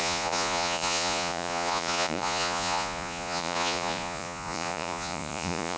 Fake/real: fake